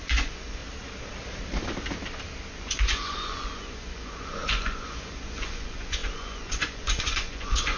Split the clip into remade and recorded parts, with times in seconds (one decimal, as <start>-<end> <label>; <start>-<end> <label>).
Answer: 0.0-0.6 remade; 0.6-2.5 recorded; 2.5-7.8 remade